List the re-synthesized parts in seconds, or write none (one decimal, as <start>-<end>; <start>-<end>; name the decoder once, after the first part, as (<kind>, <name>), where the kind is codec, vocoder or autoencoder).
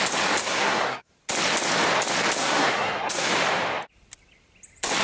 0.4-1.1 (codec, SNAC); 2.4-3.3